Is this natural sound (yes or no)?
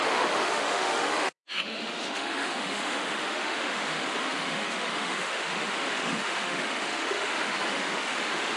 no